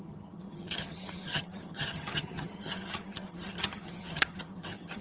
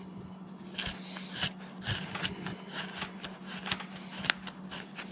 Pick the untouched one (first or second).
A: second